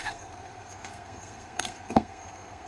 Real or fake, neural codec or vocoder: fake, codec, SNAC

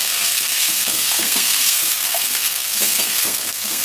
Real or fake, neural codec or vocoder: fake, codec, SNAC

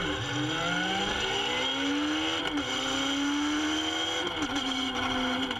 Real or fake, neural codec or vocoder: real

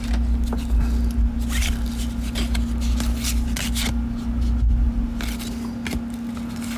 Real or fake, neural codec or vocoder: real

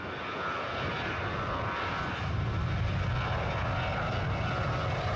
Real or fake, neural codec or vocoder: real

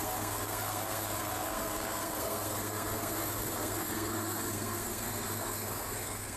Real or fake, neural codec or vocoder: fake, codec, SNAC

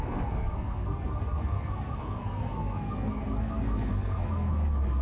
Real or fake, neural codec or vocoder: fake, codec, SNAC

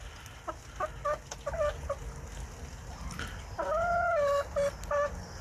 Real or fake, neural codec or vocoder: real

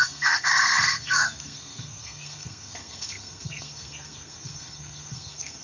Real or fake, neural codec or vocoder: fake, codec, SNAC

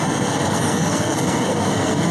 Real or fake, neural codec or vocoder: fake, codec, SNAC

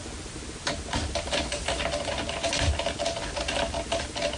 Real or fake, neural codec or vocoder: real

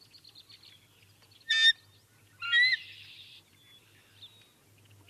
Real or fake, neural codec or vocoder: real